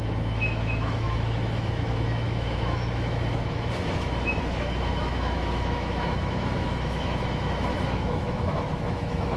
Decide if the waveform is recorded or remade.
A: remade